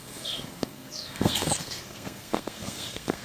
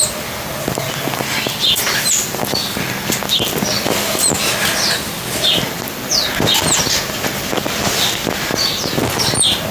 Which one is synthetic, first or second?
first